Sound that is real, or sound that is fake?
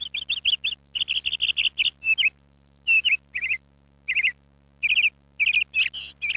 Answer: real